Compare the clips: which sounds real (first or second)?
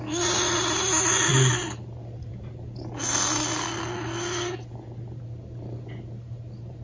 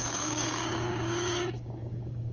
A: first